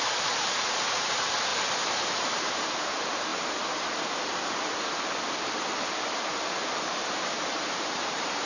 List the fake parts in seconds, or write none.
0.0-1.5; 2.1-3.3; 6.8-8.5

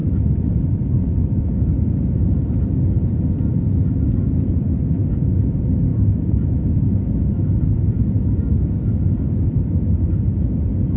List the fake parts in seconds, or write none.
0.0-1.4; 5.9-6.6

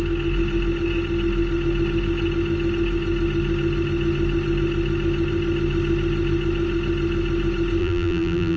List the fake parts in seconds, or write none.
7.8-8.6

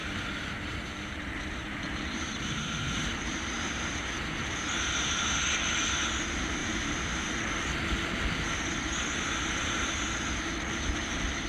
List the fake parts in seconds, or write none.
0.0-4.9; 6.6-7.4